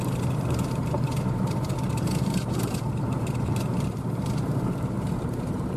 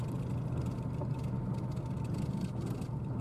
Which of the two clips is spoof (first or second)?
first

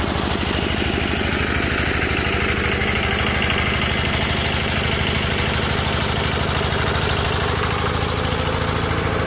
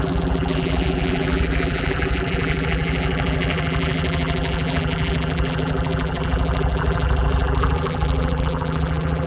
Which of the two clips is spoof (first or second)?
second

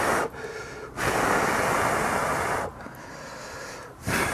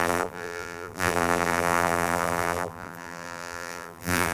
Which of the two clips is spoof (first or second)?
second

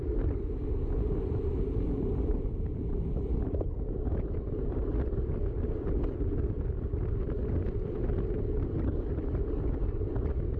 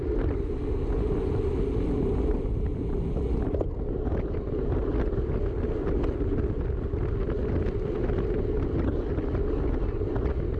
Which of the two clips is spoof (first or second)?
first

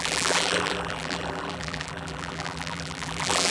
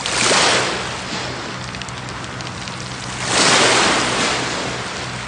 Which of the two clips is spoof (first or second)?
first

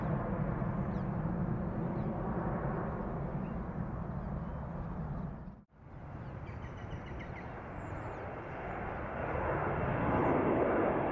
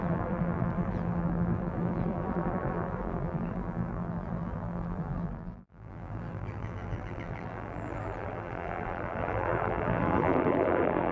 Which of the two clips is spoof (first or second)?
second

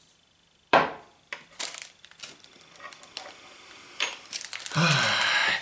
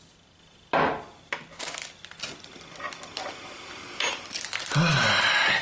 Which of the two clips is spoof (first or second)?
first